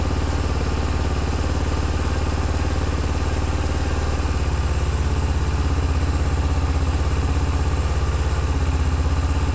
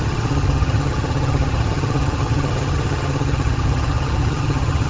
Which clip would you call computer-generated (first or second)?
second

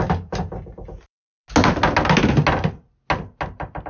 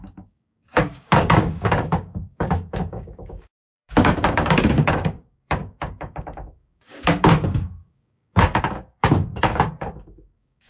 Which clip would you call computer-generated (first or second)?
second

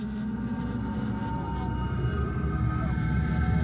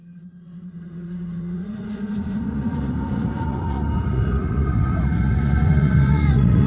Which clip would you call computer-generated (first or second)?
second